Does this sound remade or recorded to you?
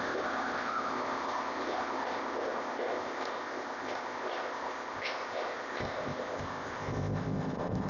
remade